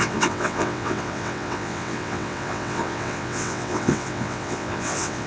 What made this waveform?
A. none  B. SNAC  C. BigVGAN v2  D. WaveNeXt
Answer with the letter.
D